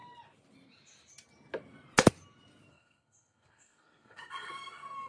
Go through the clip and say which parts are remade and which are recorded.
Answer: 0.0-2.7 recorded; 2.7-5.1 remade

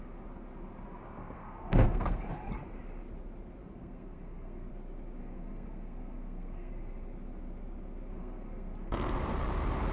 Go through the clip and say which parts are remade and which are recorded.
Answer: 0.0-1.2 recorded; 1.2-2.3 remade; 2.3-3.6 recorded; 3.6-4.7 remade; 4.7-5.2 recorded; 5.2-6.7 remade; 6.7-8.1 recorded; 8.1-9.1 remade; 9.1-9.9 recorded

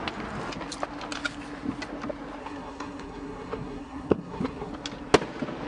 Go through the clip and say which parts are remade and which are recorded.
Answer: 0.0-2.4 recorded; 2.4-4.7 remade; 4.7-5.7 recorded

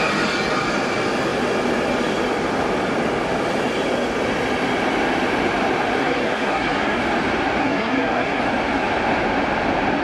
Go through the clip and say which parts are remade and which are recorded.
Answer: 0.0-6.0 recorded; 6.0-7.0 remade; 7.0-7.6 recorded; 7.6-8.4 remade; 8.4-10.0 recorded